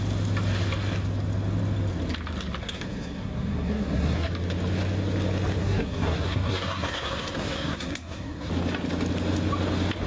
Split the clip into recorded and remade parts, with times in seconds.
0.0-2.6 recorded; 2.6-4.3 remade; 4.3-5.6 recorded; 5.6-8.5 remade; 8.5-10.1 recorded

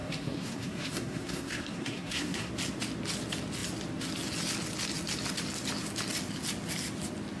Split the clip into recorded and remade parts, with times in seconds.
0.0-2.5 remade; 2.5-7.4 recorded

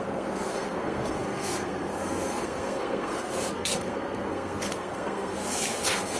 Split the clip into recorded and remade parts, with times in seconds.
0.0-6.2 remade

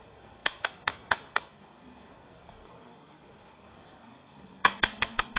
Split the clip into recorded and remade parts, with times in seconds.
0.0-5.4 remade